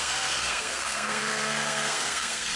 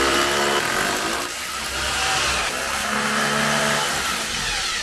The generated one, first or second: first